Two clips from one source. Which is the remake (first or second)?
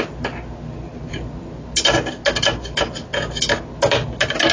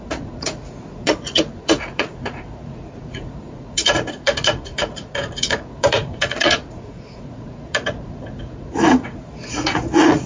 second